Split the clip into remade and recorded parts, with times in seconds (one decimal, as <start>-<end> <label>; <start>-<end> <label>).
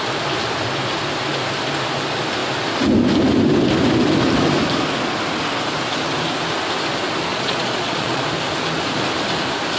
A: 0.0-7.3 recorded; 7.3-8.2 remade; 8.2-9.8 recorded